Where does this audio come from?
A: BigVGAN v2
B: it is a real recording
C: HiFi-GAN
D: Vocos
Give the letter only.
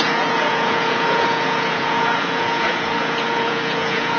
D